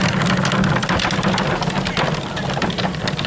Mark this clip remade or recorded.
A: recorded